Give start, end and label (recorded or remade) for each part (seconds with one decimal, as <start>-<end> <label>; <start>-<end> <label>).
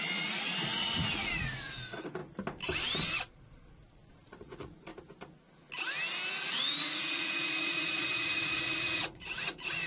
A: 0.0-2.2 remade; 2.2-4.1 recorded; 4.1-4.9 remade; 4.9-6.3 recorded; 6.3-9.9 remade